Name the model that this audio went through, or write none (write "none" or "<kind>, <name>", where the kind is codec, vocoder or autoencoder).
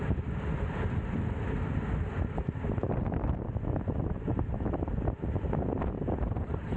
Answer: none